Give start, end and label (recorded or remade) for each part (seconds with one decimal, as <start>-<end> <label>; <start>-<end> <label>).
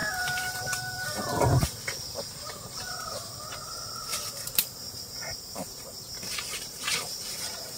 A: 0.0-2.2 remade; 2.2-4.1 recorded; 4.1-7.8 remade